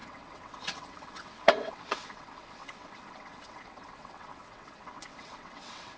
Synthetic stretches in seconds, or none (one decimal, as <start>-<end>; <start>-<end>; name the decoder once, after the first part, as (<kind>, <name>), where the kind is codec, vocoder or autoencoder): 0.0-6.0 (vocoder, WaveNeXt)